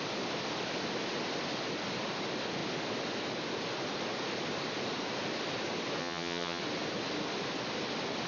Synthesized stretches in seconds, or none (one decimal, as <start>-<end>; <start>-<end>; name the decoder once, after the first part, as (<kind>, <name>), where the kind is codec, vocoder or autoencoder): 6.0-6.6 (vocoder, HiFi-GAN)